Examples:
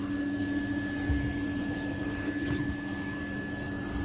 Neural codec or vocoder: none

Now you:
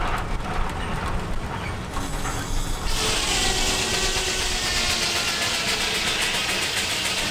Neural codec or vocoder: none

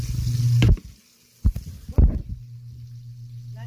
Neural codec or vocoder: none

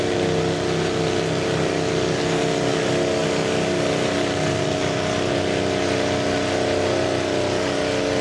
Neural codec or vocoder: none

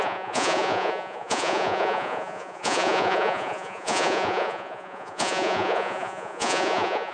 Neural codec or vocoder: vocoder, Vocos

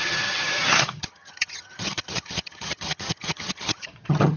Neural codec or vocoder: vocoder, HiFi-GAN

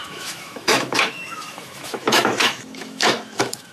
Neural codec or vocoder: autoencoder, DAC-VAE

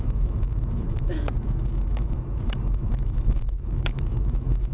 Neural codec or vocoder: autoencoder, DAC-VAE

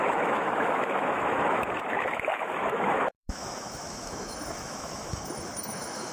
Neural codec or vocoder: autoencoder, DAC-VAE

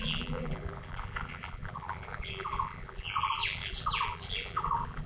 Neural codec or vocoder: vocoder, BigVGAN v2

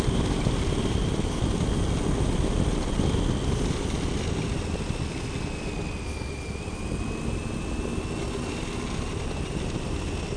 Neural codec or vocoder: none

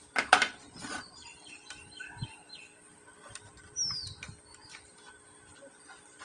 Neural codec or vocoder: none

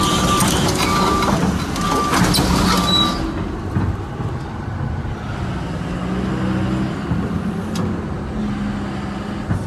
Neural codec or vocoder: none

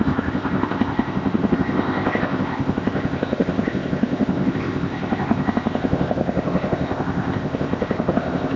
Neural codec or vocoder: codec, ZipCodec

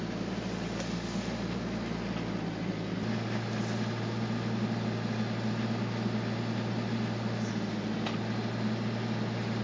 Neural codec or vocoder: none